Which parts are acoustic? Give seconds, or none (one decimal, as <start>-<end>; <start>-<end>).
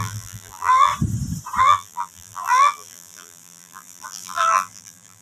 0.9-1.6